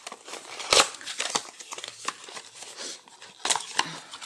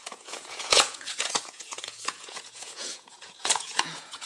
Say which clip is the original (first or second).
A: first